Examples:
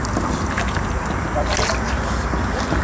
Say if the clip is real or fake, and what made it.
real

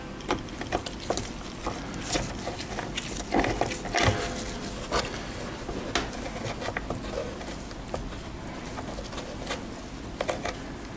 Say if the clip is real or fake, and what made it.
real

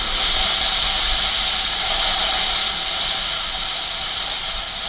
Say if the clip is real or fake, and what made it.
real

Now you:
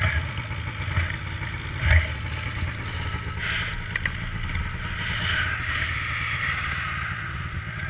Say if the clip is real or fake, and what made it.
real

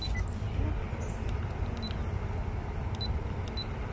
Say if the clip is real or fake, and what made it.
real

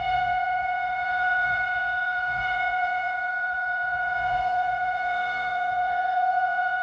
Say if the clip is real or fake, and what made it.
fake, vocoder, Vocos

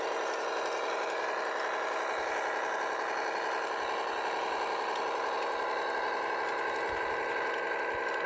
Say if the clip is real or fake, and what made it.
real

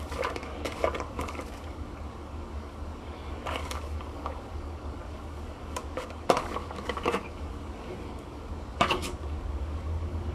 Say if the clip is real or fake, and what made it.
fake, codec, DAC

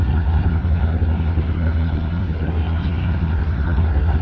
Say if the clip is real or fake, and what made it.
fake, codec, SNAC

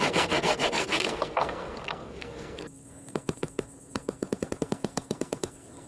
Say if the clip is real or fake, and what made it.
fake, codec, SNAC